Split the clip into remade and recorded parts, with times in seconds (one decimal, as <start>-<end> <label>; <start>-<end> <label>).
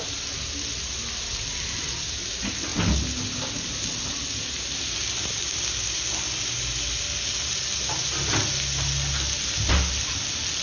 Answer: 0.0-10.6 recorded